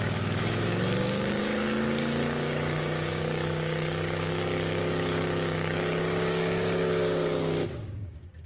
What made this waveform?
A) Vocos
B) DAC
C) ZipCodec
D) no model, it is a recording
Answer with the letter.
B